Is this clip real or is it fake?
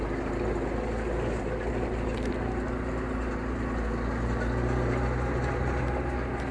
real